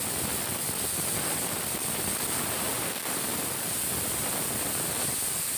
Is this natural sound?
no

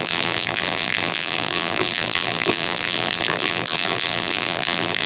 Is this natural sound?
no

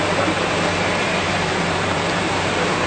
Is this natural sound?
no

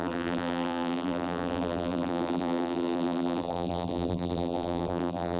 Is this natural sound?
no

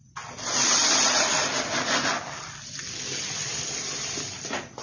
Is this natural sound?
yes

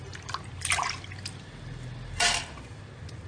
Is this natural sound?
yes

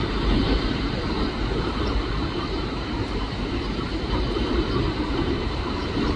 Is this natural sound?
no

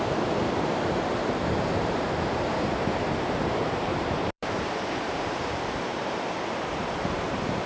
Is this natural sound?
no